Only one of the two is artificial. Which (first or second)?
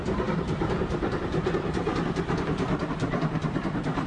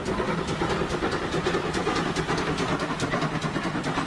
first